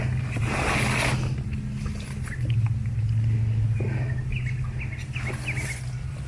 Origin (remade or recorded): recorded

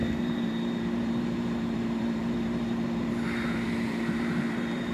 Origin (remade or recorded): remade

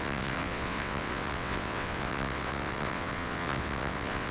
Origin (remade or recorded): remade